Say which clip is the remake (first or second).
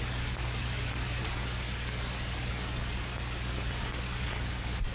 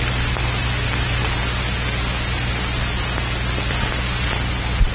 first